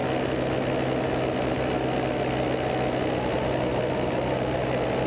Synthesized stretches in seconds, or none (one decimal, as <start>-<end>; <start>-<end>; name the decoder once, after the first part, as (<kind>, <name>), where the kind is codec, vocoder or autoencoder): none